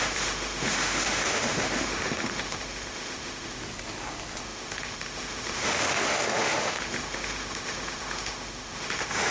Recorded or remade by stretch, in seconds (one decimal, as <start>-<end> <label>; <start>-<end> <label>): 0.0-3.6 remade; 3.6-4.4 recorded; 4.4-9.3 remade